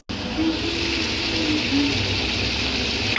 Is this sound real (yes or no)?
yes